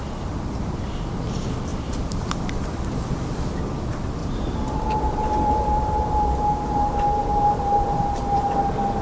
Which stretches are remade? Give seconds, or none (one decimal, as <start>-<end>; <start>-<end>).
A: 1.7-3.3; 4.2-8.6